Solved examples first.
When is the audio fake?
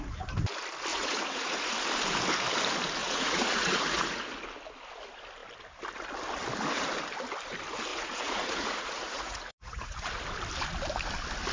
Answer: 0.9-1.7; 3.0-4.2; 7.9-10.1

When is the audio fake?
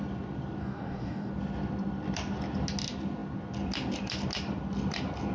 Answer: 0.6-1.3